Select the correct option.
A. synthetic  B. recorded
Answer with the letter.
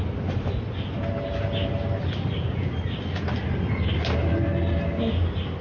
B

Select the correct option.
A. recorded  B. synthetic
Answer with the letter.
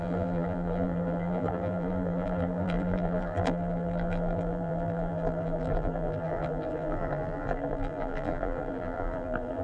B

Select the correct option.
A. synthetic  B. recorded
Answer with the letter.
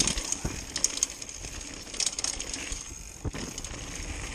B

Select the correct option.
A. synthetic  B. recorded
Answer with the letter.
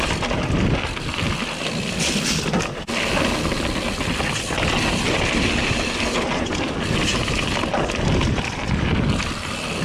B